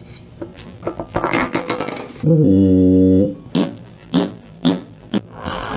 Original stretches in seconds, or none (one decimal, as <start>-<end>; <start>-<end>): 0.0-0.5; 1.9-3.6